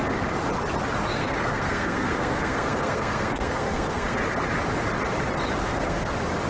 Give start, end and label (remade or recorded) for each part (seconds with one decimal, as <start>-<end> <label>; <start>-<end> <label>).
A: 0.0-1.1 recorded; 1.1-4.2 remade; 4.2-5.6 recorded; 5.6-6.1 remade; 6.1-6.5 recorded